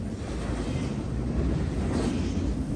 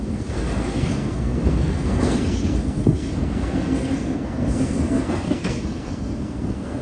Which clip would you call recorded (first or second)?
first